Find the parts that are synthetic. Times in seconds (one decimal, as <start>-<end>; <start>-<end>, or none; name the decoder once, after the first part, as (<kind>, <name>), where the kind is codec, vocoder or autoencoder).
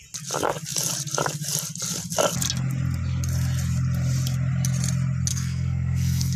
5.3-6.4 (codec, SNAC)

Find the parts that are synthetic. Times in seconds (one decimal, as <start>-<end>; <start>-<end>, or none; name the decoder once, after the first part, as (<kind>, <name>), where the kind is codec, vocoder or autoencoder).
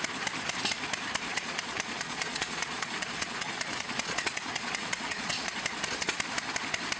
1.3-5.5 (vocoder, Vocos)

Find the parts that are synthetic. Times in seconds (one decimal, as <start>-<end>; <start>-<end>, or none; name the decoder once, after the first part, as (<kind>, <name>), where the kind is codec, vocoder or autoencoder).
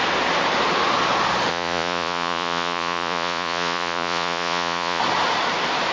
1.5-5.0 (vocoder, Vocos)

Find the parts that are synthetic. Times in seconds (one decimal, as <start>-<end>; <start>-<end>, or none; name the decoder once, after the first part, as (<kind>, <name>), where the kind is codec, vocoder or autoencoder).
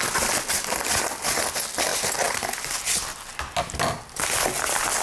none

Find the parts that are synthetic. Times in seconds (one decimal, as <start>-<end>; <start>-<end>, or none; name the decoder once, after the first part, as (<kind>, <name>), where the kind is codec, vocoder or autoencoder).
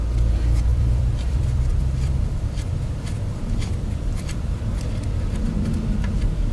0.7-4.6 (vocoder, BigVGAN v2)